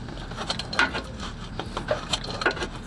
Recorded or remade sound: recorded